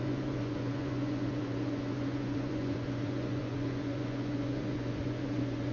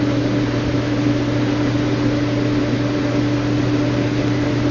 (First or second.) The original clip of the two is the second